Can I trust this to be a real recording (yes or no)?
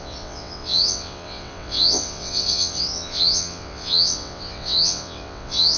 no